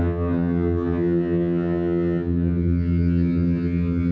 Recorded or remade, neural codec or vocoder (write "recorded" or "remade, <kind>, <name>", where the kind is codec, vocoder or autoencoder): remade, vocoder, HiFi-GAN